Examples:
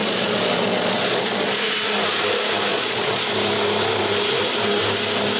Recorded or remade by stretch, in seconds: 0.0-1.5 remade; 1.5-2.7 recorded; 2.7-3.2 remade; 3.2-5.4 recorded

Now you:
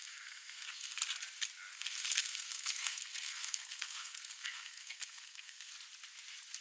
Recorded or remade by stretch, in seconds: 0.0-1.0 remade; 1.0-1.7 recorded; 1.7-5.7 remade; 5.7-6.6 recorded

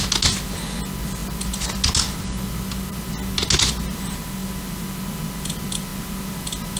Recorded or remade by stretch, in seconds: 0.0-6.8 recorded